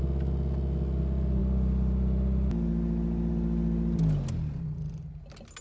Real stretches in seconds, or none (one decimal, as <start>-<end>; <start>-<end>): 0.0-5.6